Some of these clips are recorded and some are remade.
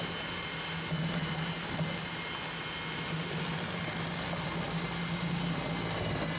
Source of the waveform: recorded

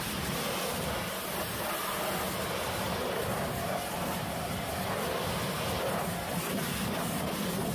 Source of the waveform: recorded